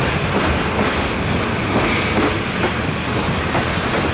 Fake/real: real